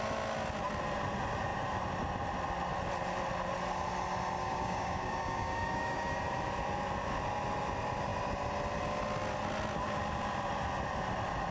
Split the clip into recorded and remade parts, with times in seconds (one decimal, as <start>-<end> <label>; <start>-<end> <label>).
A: 0.0-4.4 recorded; 4.4-6.2 remade; 6.2-11.5 recorded